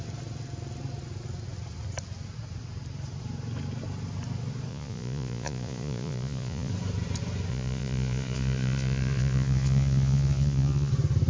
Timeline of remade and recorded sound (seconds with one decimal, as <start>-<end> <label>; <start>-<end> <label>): 0.0-4.7 recorded; 4.7-6.7 remade; 6.7-7.5 recorded; 7.5-10.9 remade; 10.9-11.3 recorded